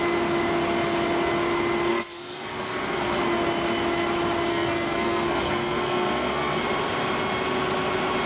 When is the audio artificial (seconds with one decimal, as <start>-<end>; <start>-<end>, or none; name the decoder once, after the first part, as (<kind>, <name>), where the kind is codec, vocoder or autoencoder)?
1.9-3.2 (codec, SNAC); 4.5-6.6